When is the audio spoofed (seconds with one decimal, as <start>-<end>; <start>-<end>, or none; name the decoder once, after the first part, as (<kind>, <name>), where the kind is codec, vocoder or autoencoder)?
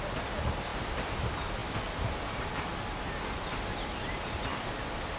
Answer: none